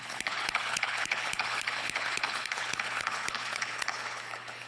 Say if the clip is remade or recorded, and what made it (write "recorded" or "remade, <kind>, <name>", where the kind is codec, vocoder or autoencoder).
remade, codec, HILCodec